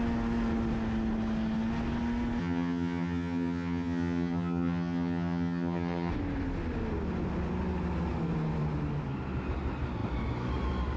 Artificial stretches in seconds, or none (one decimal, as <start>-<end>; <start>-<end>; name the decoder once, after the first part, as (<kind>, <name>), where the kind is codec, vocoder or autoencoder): 2.4-6.1 (vocoder, HiFi-GAN)